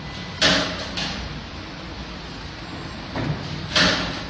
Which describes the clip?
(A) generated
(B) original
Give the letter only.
B